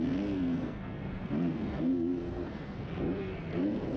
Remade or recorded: remade